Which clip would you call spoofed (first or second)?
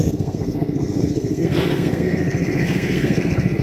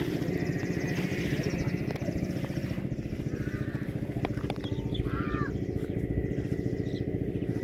first